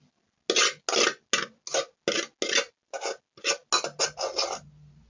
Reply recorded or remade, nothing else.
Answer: recorded